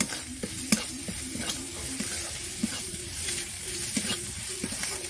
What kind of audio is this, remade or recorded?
remade